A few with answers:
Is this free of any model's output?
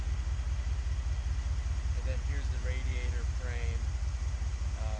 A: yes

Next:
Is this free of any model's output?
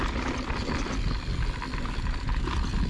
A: yes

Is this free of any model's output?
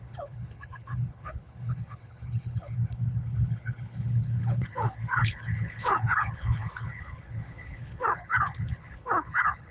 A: no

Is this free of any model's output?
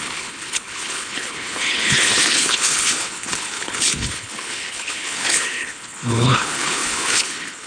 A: no